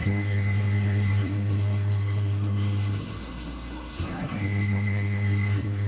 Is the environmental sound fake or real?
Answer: fake